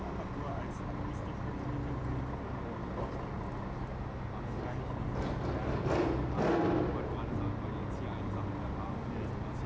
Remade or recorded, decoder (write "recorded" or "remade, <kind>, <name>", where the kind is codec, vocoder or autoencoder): recorded